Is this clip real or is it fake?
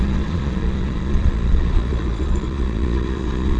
fake